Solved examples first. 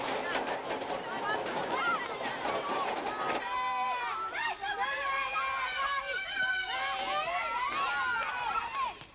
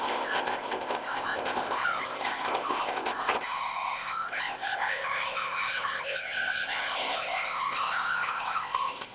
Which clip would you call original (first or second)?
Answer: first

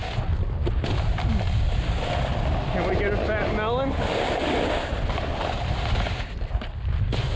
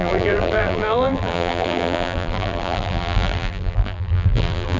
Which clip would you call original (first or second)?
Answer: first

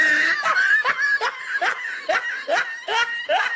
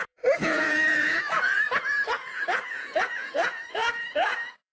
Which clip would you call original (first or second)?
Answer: first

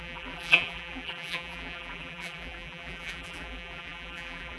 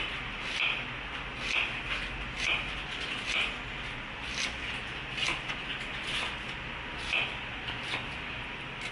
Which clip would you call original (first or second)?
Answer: second